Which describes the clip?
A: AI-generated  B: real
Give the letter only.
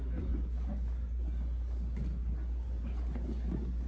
B